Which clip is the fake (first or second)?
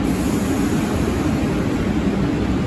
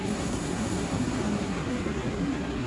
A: second